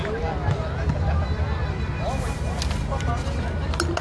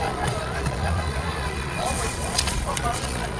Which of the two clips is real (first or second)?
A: first